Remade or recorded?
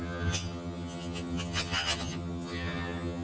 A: remade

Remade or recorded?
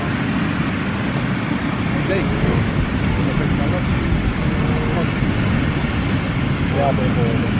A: recorded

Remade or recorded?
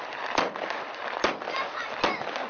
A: recorded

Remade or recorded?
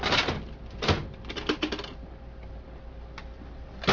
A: recorded